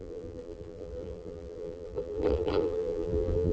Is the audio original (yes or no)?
no